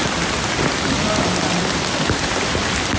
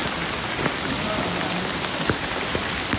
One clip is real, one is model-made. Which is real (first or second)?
second